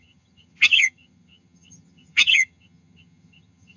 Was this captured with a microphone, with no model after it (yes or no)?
no